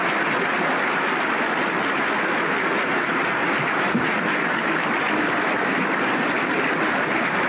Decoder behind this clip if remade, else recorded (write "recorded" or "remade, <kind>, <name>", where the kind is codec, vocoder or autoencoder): recorded